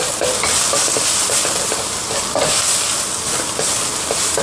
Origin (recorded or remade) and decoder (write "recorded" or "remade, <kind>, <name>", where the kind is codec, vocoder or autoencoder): recorded